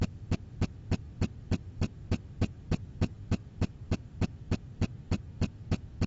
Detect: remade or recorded recorded